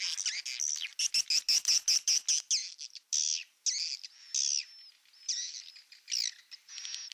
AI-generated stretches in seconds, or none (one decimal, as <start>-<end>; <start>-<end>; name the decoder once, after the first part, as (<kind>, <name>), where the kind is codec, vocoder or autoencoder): 5.2-6.4 (vocoder, BigVGAN v2)